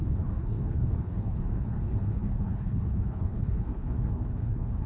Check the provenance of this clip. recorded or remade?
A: remade